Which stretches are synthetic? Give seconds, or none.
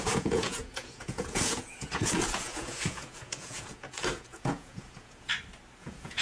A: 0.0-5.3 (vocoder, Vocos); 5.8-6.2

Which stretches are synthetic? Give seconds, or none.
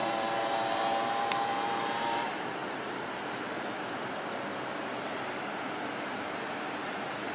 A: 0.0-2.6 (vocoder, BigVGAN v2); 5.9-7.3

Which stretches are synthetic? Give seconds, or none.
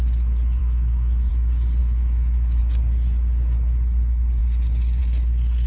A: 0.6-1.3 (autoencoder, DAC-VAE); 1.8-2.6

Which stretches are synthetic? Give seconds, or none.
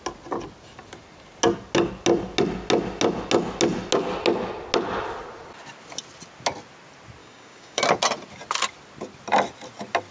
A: 7.2-7.8 (codec, DAC)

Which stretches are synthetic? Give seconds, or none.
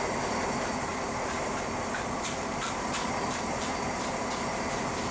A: 0.9-3.6 (vocoder, BigVGAN v2)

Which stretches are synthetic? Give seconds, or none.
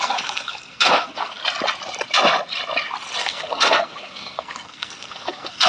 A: 0.0-1.4 (codec, SNAC); 3.2-5.7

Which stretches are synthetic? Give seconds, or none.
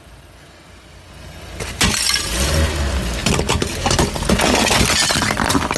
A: none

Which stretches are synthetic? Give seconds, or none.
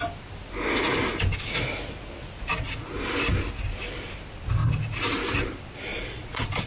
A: 5.9-6.7 (vocoder, Vocos)